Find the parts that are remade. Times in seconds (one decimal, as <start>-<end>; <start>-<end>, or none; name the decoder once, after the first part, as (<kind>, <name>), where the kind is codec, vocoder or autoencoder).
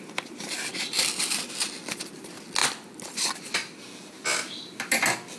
none